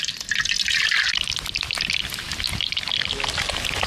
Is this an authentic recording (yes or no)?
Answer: yes